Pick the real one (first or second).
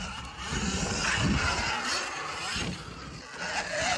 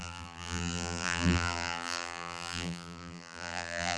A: first